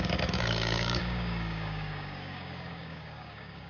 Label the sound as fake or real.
fake